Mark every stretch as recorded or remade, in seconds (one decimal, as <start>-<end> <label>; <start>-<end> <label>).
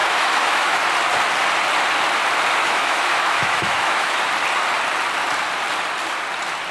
0.0-0.8 remade; 0.8-2.6 recorded; 2.6-4.2 remade; 4.2-6.7 recorded